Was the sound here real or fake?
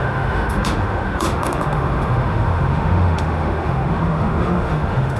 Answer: fake